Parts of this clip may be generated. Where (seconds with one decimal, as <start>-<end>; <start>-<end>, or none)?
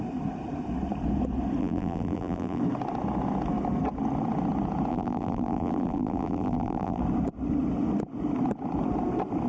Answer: 1.6-2.6; 4.9-7.0